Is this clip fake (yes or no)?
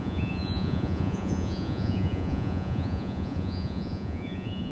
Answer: yes